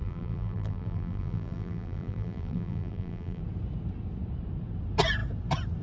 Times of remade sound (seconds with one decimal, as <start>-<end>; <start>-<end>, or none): 0.0-3.4